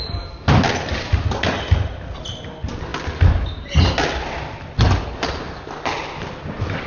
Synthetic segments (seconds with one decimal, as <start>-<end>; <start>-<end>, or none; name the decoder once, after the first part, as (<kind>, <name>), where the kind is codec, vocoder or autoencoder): none